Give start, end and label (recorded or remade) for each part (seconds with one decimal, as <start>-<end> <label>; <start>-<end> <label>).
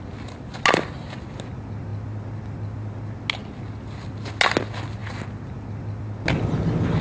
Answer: 0.0-7.0 recorded